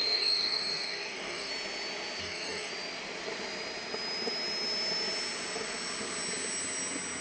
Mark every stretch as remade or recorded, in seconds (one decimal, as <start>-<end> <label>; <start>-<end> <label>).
0.0-1.5 remade; 1.5-2.2 recorded; 2.2-2.7 remade; 2.7-7.2 recorded